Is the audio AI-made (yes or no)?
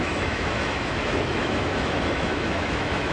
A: yes